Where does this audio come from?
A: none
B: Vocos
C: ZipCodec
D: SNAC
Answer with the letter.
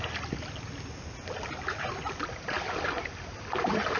A